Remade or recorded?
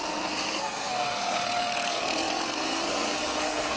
remade